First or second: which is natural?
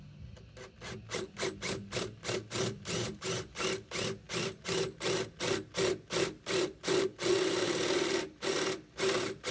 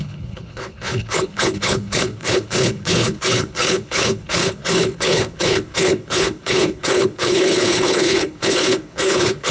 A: first